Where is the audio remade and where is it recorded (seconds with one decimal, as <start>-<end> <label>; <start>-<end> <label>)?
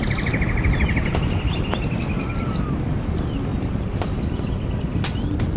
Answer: 0.0-5.6 recorded